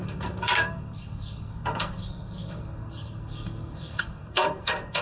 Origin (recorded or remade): remade